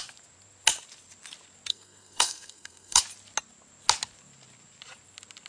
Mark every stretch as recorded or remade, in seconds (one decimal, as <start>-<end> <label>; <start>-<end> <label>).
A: 0.0-1.7 recorded; 1.7-3.0 remade; 3.0-5.5 recorded